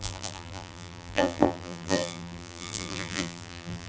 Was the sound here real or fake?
fake